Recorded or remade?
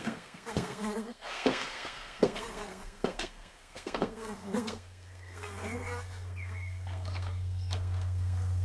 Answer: remade